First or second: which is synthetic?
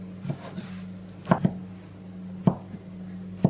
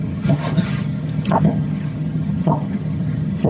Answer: second